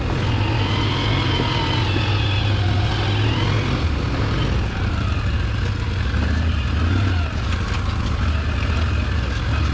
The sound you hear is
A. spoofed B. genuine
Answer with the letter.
B